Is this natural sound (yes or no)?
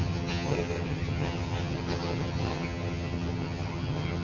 no